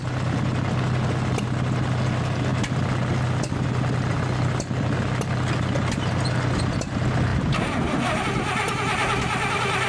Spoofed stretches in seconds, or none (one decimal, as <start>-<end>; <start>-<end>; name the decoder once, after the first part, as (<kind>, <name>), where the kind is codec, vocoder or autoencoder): 7.3-8.2 (vocoder, BigVGAN v2)